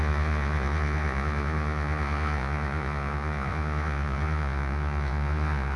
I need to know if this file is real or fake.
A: fake